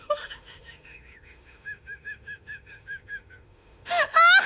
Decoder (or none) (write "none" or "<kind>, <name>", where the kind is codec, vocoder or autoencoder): autoencoder, DAC-VAE